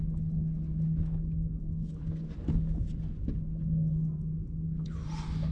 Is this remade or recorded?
recorded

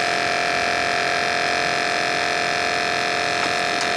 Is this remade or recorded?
recorded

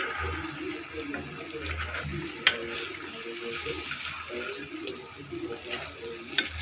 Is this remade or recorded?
recorded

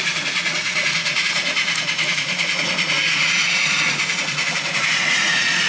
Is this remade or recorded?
remade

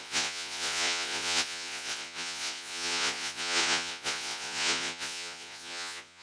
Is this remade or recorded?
remade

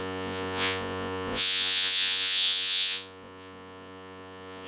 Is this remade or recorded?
remade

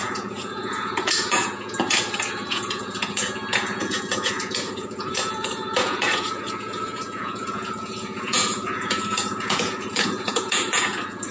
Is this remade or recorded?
remade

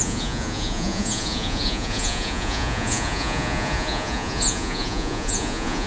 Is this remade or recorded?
remade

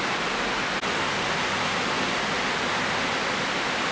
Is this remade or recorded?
recorded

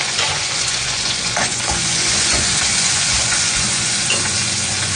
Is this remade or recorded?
remade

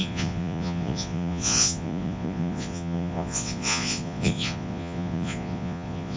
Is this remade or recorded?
remade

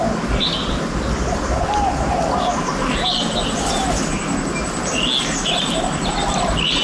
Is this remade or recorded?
recorded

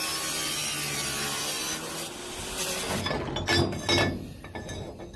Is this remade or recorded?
recorded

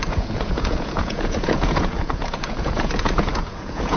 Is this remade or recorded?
remade